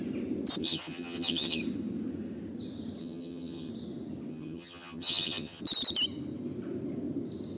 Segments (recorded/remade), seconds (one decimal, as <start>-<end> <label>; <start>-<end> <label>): 0.0-0.6 recorded; 0.6-1.6 remade; 1.6-3.0 recorded; 3.0-3.7 remade; 3.7-4.3 recorded; 4.3-5.6 remade; 5.6-7.6 recorded